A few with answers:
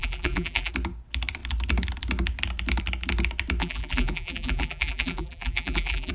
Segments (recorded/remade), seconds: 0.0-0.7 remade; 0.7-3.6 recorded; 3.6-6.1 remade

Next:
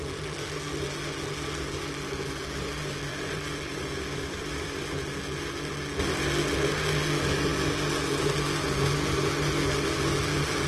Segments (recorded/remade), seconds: 0.0-3.1 recorded; 3.1-4.9 remade; 4.9-10.7 recorded

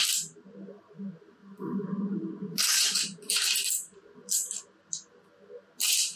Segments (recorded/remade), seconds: 0.0-0.8 remade; 0.8-1.4 recorded; 1.4-4.0 remade; 4.0-6.2 recorded

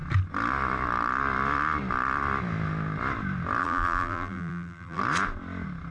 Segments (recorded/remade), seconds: 0.0-3.6 recorded; 3.6-5.0 remade; 5.0-5.9 recorded

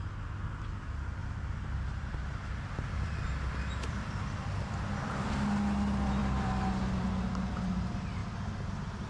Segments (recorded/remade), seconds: 0.0-1.2 recorded; 1.2-5.3 remade; 5.3-6.2 recorded; 6.2-7.0 remade; 7.0-9.1 recorded

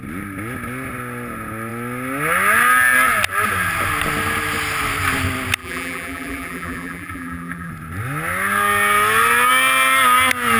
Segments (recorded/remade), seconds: 0.0-5.6 recorded; 5.6-7.7 remade; 7.7-10.6 recorded

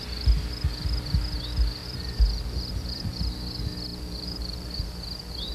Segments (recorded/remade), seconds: 0.0-1.8 recorded; 1.8-3.1 remade; 3.1-3.9 recorded; 3.9-4.8 remade; 4.8-5.5 recorded

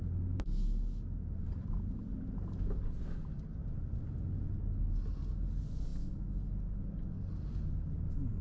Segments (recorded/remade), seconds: 0.0-8.4 recorded